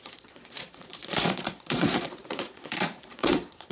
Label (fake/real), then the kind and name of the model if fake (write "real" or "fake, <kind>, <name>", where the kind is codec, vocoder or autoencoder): fake, vocoder, Vocos